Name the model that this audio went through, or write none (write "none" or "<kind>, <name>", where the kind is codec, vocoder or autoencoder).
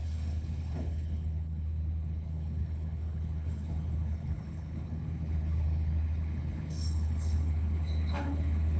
codec, HILCodec